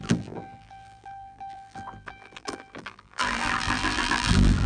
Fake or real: fake